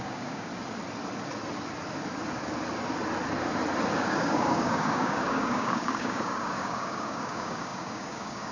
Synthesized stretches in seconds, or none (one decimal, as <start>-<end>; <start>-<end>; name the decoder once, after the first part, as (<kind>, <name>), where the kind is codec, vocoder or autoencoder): 0.0-0.5 (codec, DAC); 4.0-8.5